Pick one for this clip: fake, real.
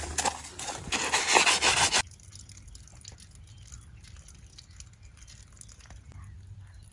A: real